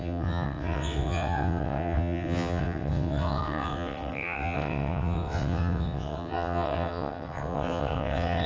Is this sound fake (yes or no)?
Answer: yes